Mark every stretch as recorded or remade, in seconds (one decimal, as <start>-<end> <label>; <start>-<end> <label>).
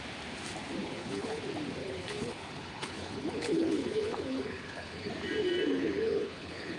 0.0-0.8 recorded; 0.8-1.4 remade; 1.4-1.8 recorded; 1.8-5.1 remade; 5.1-5.7 recorded; 5.7-6.8 remade